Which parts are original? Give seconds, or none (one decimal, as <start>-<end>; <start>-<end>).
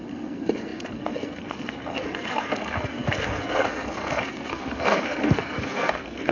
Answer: none